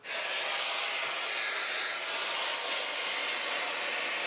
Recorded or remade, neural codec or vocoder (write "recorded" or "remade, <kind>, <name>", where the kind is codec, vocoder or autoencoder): recorded